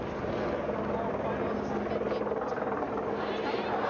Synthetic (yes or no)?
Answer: no